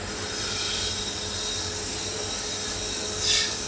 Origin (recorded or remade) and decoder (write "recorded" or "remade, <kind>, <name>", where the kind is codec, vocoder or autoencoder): recorded